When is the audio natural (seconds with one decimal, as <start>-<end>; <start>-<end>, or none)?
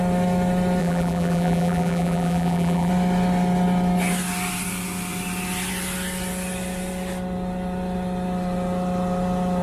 0.0-0.8; 2.9-9.6